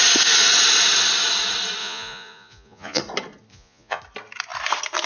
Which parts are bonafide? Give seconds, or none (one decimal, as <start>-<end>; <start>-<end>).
0.0-1.8; 3.0-3.5; 4.0-5.1